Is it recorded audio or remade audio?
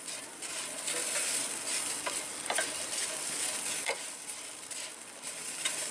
recorded